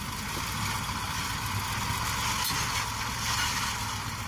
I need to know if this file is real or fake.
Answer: real